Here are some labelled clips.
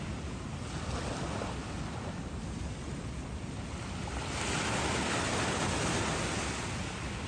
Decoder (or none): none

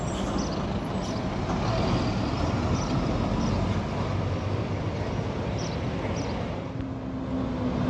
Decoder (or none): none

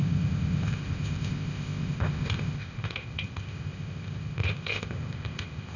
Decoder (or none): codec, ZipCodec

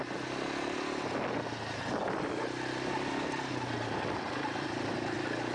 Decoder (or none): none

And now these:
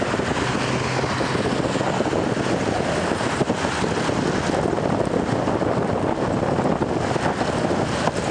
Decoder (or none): none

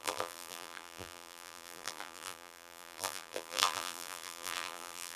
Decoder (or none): vocoder, BigVGAN v2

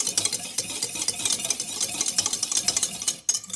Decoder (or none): none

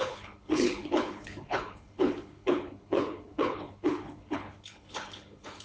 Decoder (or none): codec, HILCodec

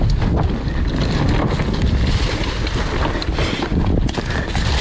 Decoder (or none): none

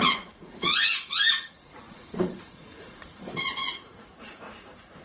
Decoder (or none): vocoder, Vocos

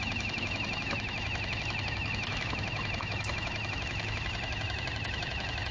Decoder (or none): autoencoder, DAC-VAE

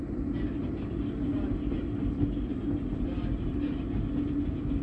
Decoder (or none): none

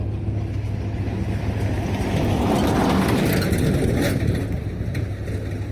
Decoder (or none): none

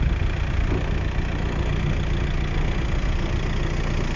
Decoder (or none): none